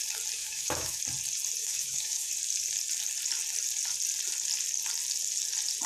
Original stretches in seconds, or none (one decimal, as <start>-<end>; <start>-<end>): 0.0-0.4; 1.0-1.6; 2.3-5.9